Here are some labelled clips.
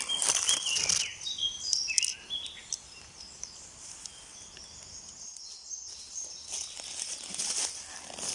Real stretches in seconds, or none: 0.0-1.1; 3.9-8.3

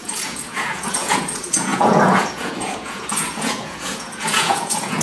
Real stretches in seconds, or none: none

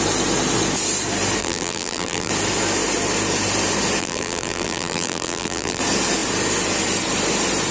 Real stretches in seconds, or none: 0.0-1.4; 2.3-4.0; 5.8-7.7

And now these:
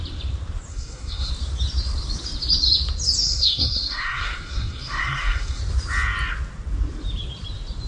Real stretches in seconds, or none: 0.0-0.7; 1.3-3.2; 5.6-7.9

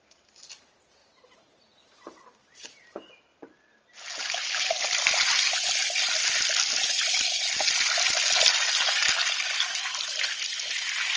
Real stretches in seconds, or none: 0.0-1.0; 4.7-11.2

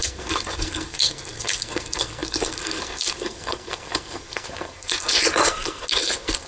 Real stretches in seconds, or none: none

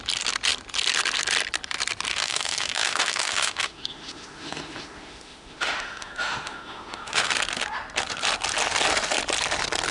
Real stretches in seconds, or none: 0.0-2.1; 7.3-9.9